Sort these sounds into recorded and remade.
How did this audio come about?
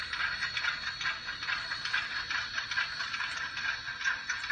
recorded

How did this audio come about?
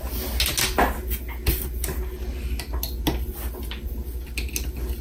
recorded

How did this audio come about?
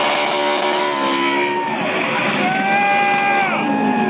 recorded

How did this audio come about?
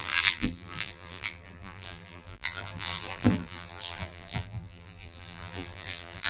remade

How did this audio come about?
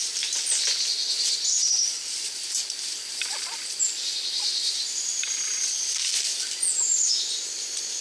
recorded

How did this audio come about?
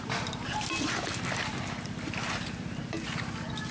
recorded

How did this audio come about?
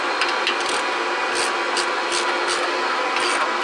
recorded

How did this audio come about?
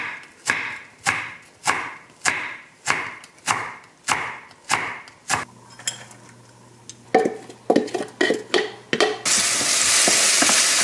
recorded